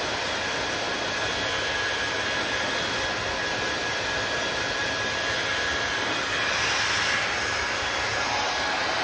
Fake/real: real